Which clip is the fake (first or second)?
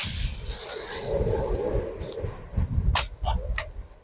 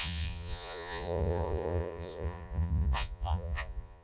second